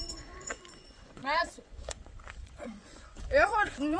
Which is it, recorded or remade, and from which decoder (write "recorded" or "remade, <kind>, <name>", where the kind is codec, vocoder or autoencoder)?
remade, vocoder, Vocos